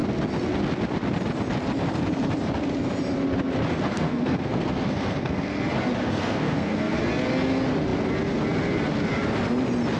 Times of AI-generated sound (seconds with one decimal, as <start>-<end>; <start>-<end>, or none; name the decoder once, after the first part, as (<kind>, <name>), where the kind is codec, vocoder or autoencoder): 3.7-5.6 (codec, SNAC); 6.0-7.0